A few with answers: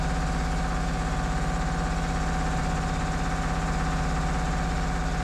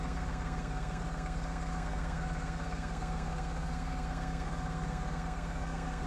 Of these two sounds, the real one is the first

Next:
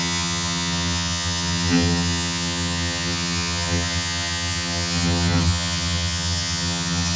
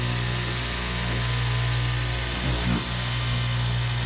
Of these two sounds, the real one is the second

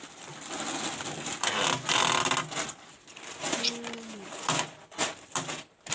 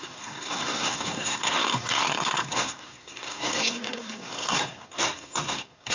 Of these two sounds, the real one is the first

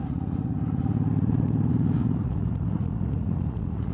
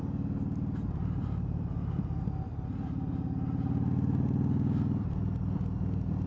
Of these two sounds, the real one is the second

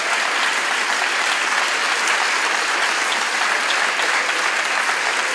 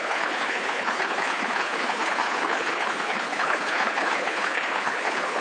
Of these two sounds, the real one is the first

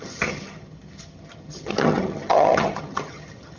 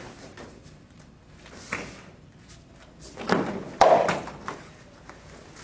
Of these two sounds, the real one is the second